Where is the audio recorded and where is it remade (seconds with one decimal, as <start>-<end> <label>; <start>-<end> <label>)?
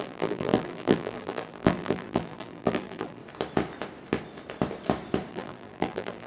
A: 0.0-3.2 remade; 3.2-5.3 recorded; 5.3-6.3 remade